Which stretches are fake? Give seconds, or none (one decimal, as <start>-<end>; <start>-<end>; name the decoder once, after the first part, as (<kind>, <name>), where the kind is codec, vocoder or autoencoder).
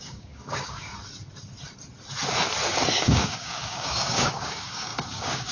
0.0-0.9 (codec, DAC); 3.0-5.5